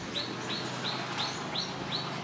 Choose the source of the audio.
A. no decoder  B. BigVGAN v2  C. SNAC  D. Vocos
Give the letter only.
A